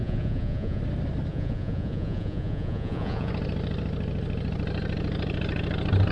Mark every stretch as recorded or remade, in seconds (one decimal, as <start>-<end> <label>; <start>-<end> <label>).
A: 0.0-0.8 remade; 0.8-1.3 recorded; 1.3-3.3 remade; 3.3-6.1 recorded